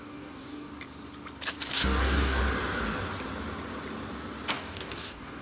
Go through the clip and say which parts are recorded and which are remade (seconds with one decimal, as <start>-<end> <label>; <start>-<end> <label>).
0.0-0.7 remade; 0.7-1.7 recorded; 1.7-2.4 remade; 2.4-4.5 recorded; 4.5-5.4 remade